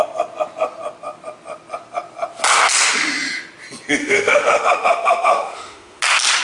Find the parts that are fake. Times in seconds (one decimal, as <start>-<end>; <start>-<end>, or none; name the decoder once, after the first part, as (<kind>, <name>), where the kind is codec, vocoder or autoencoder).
4.0-6.0 (autoencoder, DAC-VAE)